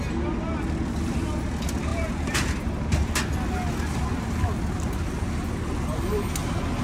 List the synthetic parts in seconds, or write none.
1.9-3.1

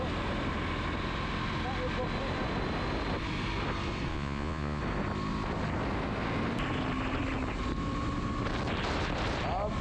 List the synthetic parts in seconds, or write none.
4.1-4.8

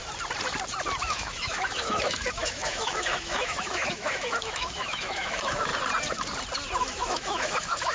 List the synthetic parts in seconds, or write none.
1.0-5.7; 6.8-7.9

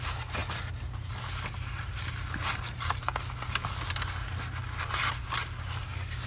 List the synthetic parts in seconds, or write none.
none

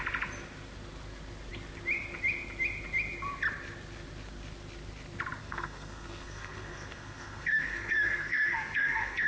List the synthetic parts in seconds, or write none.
5.4-9.3

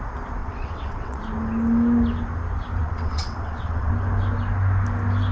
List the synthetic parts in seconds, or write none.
0.4-1.2; 2.8-3.9